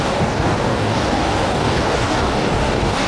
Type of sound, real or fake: fake